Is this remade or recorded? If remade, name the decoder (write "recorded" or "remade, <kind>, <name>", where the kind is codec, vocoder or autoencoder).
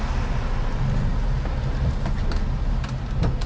recorded